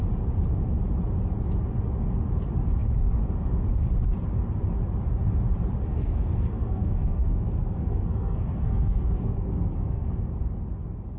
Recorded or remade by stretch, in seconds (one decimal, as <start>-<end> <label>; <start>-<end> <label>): 0.0-5.9 recorded; 5.9-10.3 remade; 10.3-11.2 recorded